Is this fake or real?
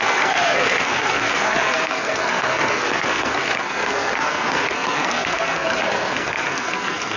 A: fake